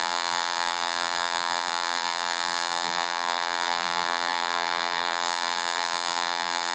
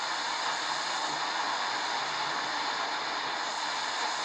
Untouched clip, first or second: second